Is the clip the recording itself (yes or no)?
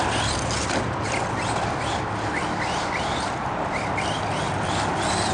yes